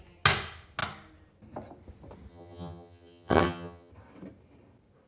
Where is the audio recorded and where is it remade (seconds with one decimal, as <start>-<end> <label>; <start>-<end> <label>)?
0.0-2.3 recorded; 2.3-3.9 remade; 3.9-5.1 recorded